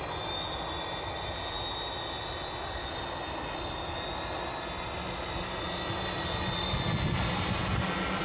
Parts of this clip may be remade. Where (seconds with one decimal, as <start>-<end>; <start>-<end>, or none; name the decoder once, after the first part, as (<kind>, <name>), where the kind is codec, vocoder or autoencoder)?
none